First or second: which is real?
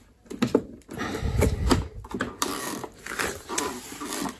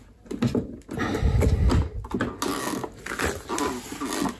second